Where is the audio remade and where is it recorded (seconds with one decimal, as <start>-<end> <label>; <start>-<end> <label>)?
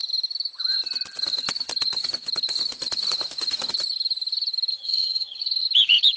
0.0-4.7 recorded; 4.7-5.4 remade; 5.4-6.2 recorded